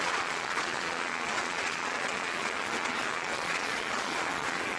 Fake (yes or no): yes